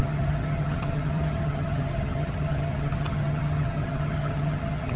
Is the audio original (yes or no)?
no